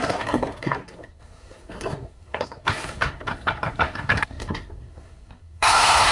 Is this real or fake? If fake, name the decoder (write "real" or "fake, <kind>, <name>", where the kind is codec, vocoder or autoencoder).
fake, codec, SNAC